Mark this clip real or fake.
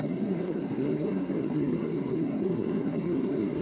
fake